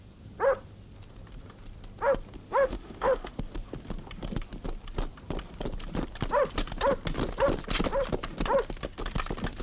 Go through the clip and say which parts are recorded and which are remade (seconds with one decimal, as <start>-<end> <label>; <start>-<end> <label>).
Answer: 0.0-2.5 recorded; 2.5-3.3 remade; 3.3-9.6 recorded